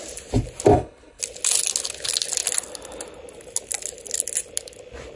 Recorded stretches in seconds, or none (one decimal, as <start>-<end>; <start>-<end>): 0.0-0.7; 1.2-5.2